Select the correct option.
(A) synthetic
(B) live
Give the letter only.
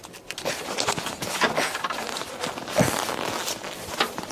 B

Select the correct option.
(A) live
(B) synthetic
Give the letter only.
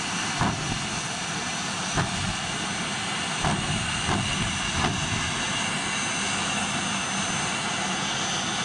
A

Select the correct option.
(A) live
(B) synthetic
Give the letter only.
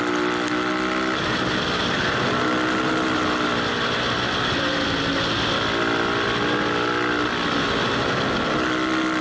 A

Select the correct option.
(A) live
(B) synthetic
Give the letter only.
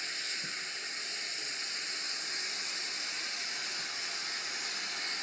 A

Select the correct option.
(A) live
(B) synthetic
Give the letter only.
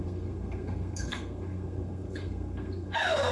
B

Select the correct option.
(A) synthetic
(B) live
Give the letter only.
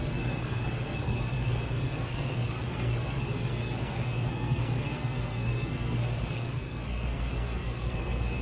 A